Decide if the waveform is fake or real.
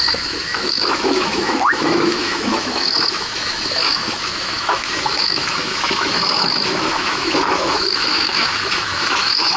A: fake